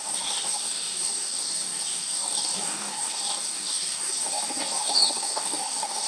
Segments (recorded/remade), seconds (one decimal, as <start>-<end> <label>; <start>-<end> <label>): 0.0-6.1 remade